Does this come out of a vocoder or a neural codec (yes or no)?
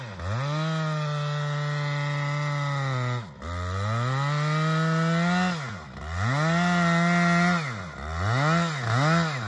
no